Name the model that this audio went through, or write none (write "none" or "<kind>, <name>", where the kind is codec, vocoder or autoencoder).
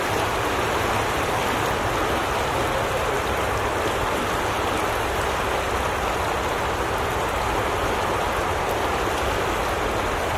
none